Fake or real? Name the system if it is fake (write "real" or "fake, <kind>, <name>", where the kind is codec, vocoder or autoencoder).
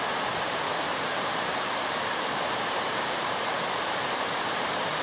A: fake, vocoder, BigVGAN v2